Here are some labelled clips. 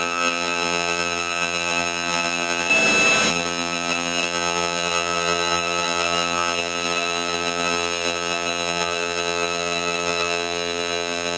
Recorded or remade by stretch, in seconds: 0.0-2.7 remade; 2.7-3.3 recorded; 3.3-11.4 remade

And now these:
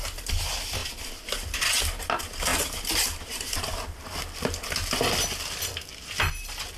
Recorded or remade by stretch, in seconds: 0.0-6.8 recorded

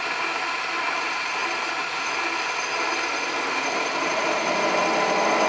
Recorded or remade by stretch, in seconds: 0.0-5.5 recorded

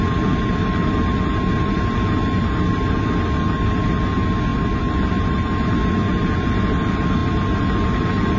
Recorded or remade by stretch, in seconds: 0.0-4.5 recorded; 4.5-5.1 remade; 5.1-8.4 recorded

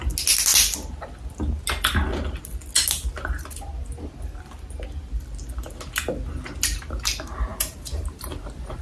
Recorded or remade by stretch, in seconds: 0.0-7.5 recorded; 7.5-8.8 remade

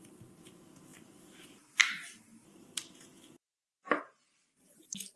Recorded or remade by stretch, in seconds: 0.0-5.2 recorded

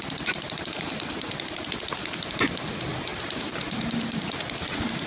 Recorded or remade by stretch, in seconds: 0.0-1.7 remade; 1.7-5.1 recorded

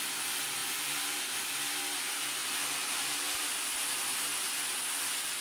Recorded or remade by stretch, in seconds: 0.0-0.6 recorded; 0.6-1.2 remade; 1.2-2.4 recorded; 2.4-3.4 remade; 3.4-5.4 recorded